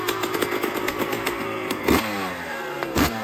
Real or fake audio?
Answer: fake